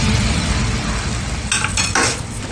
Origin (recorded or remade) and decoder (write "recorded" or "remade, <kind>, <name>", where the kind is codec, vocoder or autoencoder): recorded